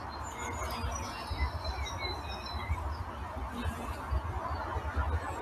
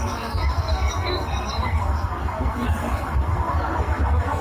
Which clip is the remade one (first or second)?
second